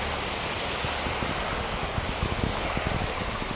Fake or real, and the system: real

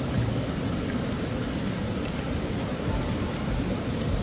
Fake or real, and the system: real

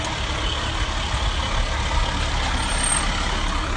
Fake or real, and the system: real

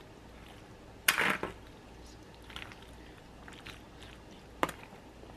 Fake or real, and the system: real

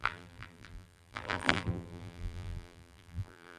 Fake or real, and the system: fake, vocoder, BigVGAN v2